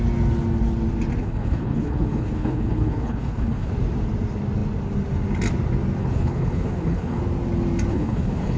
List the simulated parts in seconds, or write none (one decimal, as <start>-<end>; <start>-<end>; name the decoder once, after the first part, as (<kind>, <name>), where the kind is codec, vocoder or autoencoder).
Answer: 1.2-3.7 (codec, HILCodec); 6.0-7.2; 7.9-8.6

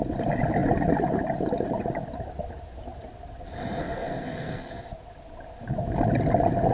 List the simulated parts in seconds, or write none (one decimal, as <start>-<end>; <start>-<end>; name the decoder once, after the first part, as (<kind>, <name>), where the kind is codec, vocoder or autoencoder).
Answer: 3.8-4.7 (codec, SNAC)

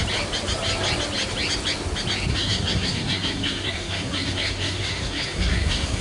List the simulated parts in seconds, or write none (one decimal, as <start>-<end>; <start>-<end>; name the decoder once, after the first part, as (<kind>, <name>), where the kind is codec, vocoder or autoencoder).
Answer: 2.3-6.0 (codec, SNAC)